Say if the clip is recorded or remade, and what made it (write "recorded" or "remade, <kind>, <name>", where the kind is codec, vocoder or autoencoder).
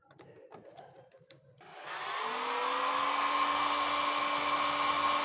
recorded